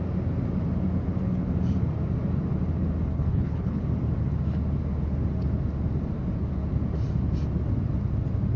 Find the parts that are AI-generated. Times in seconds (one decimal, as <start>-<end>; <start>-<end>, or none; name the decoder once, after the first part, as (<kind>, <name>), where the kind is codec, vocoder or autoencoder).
3.1-3.8 (codec, HILCodec)